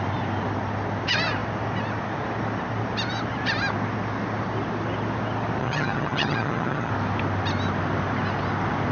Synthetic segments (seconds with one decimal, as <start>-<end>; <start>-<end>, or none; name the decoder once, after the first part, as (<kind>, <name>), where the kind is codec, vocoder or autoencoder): 5.6-6.9 (vocoder, HiFi-GAN)